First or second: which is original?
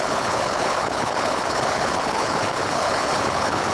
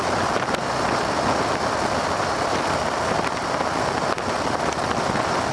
second